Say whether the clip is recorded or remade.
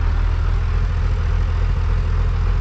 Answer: recorded